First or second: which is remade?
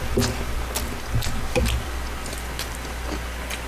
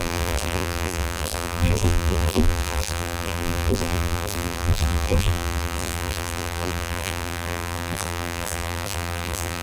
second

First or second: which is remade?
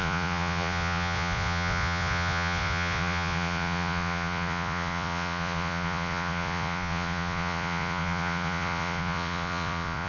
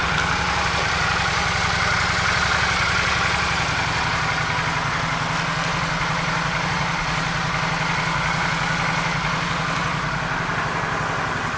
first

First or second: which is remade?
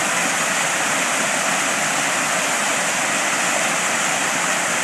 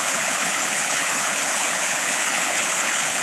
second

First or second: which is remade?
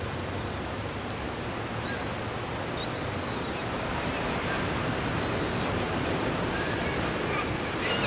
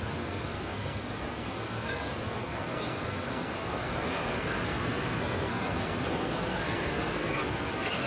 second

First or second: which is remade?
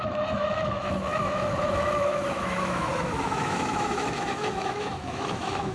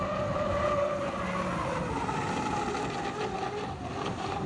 first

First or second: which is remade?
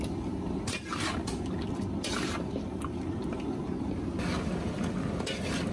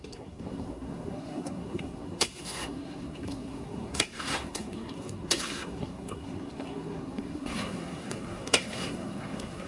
second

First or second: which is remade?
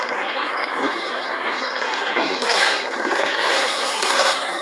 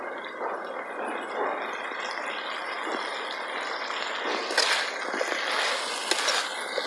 first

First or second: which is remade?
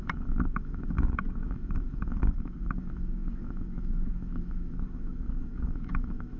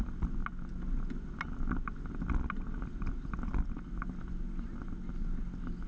first